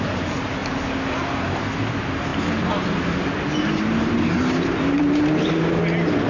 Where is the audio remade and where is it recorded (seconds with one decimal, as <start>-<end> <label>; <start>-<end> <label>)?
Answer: 0.0-0.6 remade; 0.6-1.9 recorded; 1.9-6.3 remade